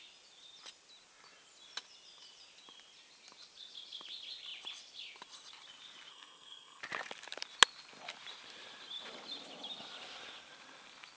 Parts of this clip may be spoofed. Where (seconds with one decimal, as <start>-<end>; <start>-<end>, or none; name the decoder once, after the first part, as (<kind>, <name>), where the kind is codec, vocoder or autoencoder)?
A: 6.1-6.8 (codec, SNAC)